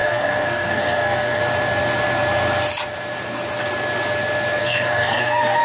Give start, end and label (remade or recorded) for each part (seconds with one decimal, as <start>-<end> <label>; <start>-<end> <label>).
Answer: 0.0-1.4 remade; 1.4-4.6 recorded; 4.6-5.6 remade